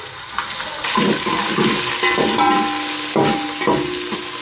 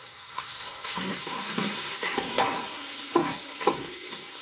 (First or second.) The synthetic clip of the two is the second